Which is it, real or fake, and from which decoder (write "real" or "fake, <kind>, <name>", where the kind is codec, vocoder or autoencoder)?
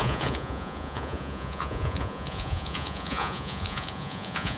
fake, vocoder, Vocos